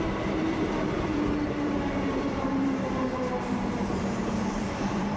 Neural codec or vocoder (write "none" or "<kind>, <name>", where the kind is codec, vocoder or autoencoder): vocoder, BigVGAN v2